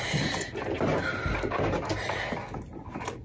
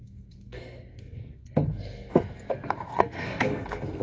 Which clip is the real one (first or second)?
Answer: first